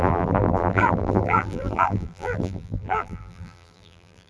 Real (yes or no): no